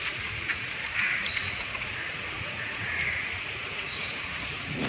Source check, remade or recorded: remade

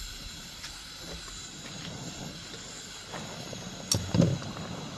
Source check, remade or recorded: recorded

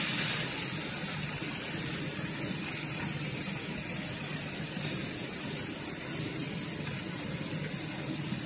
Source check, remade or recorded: recorded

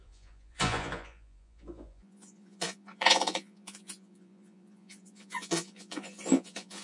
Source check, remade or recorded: remade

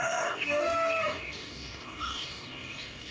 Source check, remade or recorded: remade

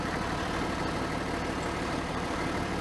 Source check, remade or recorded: remade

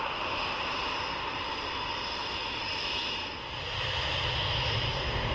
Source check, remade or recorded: recorded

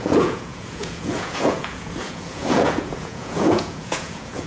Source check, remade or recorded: remade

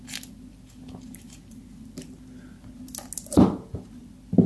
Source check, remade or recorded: recorded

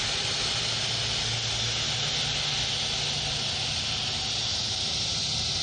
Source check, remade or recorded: recorded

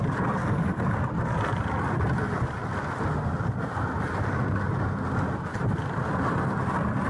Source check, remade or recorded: recorded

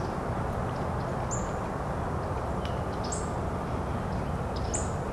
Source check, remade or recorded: recorded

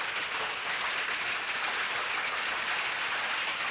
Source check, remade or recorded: recorded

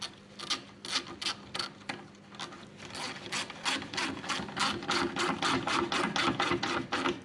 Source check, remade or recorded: recorded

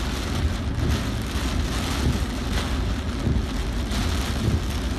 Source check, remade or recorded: recorded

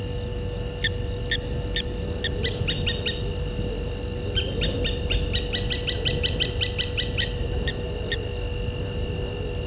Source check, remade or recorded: recorded